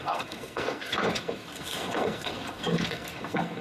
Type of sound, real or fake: fake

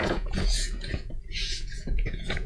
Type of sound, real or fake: fake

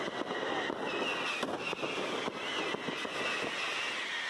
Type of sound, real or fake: real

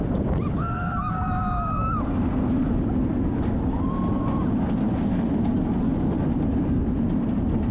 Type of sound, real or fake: real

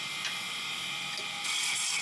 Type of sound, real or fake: real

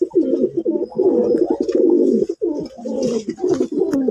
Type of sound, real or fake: real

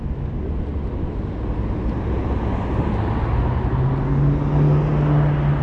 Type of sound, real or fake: real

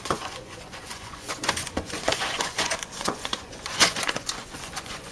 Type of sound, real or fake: fake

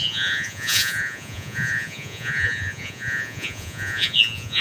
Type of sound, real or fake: fake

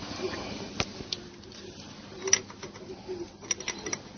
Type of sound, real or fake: real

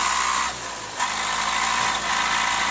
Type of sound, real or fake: real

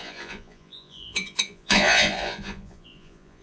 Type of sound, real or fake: fake